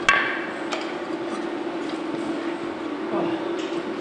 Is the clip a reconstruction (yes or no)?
no